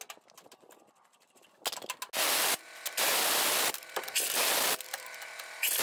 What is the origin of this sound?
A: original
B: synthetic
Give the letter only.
A